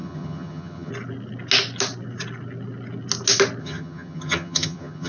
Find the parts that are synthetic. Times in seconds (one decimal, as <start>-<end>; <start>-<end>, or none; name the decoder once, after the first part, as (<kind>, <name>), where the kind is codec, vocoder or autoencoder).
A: 0.0-0.9 (vocoder, HiFi-GAN); 3.6-5.1